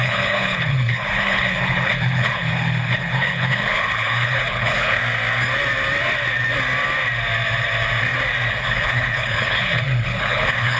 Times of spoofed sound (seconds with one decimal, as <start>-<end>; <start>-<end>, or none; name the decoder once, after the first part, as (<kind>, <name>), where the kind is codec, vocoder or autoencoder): 0.0-5.0 (codec, HILCodec); 8.5-10.8

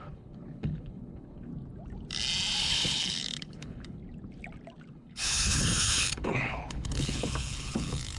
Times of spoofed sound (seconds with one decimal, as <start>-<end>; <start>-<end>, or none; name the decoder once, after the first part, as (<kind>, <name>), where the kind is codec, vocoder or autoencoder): 0.0-1.5 (codec, HILCodec); 2.6-4.0; 4.9-8.2

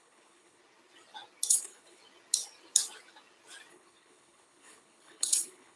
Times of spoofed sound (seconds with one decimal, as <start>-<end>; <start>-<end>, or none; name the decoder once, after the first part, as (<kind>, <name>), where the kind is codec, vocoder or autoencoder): 0.0-0.6 (codec, HILCodec); 1.5-2.0; 3.7-5.8

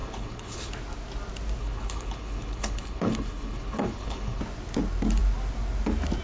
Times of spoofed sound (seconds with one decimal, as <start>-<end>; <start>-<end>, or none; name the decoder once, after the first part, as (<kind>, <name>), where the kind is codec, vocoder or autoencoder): 0.0-0.7 (codec, HILCodec); 1.6-4.4